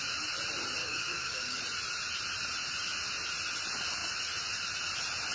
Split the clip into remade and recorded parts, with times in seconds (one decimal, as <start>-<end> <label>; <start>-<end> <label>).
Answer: 0.0-0.8 recorded; 0.8-1.6 remade; 1.6-5.3 recorded